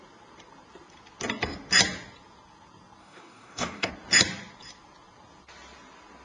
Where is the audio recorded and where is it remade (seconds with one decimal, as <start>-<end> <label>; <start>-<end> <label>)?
0.0-3.0 recorded; 3.0-3.9 remade; 3.9-6.2 recorded